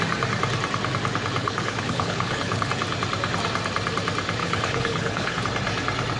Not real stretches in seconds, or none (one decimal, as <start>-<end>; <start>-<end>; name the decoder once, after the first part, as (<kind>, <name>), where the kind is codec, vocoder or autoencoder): 1.4-2.7 (codec, HILCodec); 4.4-5.4